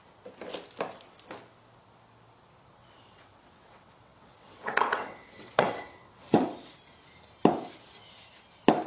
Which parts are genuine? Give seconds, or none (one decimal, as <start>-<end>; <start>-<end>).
0.0-2.8; 6.8-8.9